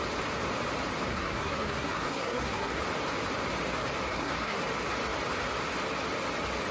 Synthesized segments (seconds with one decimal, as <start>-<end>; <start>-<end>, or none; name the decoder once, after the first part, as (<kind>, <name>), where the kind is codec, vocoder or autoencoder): 1.1-2.8 (codec, SNAC); 4.1-4.6